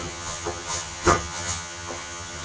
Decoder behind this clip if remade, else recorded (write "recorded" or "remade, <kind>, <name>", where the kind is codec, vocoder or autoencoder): remade, vocoder, HiFi-GAN